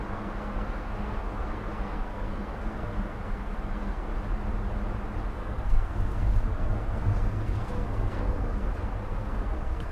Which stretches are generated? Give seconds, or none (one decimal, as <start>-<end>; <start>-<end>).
0.0-4.1; 5.3-9.9